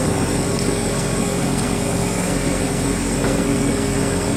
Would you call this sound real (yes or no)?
no